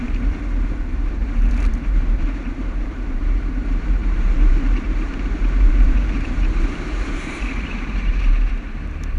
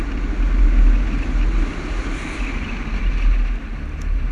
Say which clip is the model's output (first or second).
first